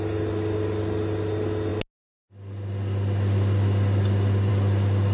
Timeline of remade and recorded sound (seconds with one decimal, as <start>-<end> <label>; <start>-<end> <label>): 0.0-5.1 recorded